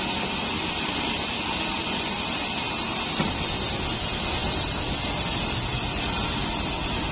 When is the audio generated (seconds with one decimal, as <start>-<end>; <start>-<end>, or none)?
none